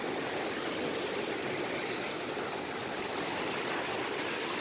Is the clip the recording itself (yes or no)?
yes